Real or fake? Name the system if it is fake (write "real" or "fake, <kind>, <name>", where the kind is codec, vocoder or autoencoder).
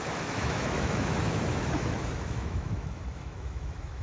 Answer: fake, autoencoder, DAC-VAE